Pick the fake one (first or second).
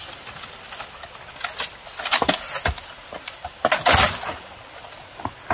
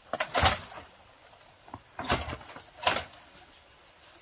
second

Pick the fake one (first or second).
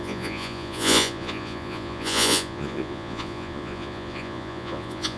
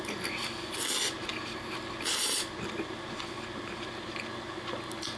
first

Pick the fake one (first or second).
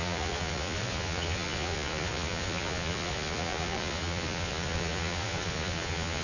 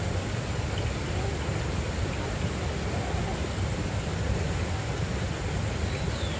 first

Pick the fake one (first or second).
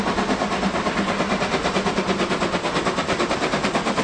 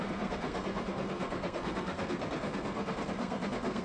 second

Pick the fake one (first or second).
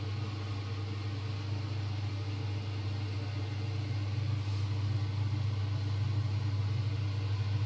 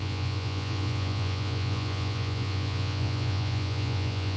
second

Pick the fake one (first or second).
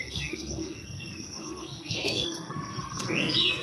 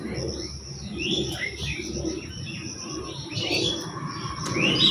first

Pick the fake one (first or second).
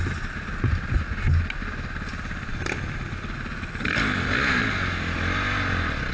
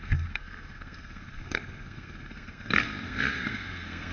second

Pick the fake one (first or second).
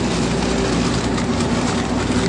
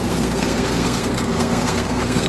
second